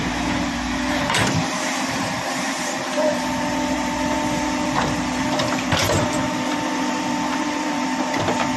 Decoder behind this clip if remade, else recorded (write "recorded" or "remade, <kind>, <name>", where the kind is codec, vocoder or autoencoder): remade, vocoder, BigVGAN v2